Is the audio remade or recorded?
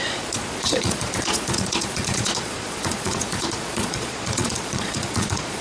remade